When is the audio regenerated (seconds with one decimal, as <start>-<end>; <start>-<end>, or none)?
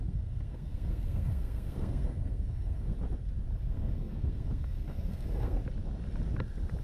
0.0-2.9; 3.6-5.6